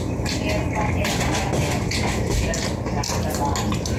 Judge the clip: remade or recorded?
recorded